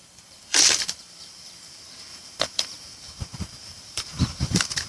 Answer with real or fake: fake